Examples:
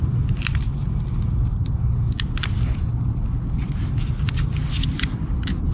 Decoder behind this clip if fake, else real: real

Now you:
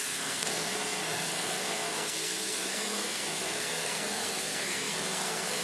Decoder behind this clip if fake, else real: fake, codec, SNAC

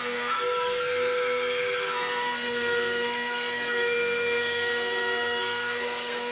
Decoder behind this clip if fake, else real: fake, codec, SNAC